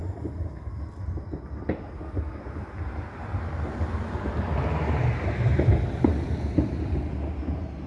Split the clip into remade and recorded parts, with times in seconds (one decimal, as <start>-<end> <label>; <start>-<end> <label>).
0.0-0.6 remade; 0.6-7.9 recorded